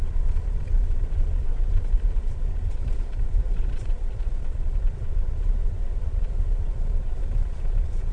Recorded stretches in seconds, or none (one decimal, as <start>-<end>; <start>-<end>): none